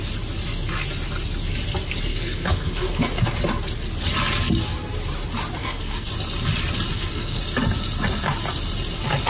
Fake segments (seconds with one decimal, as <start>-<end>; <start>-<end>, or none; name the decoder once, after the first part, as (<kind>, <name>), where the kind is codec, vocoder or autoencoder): 2.1-3.2 (codec, SNAC); 5.6-6.1; 6.9-7.4